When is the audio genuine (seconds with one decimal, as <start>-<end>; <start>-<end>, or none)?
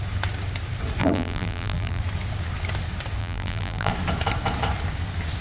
0.0-1.0; 2.0-3.2; 3.9-5.4